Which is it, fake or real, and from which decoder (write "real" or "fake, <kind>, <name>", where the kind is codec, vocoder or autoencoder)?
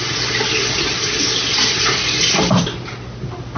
real